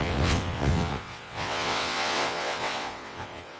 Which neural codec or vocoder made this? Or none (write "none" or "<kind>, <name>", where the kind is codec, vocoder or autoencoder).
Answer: vocoder, WaveNeXt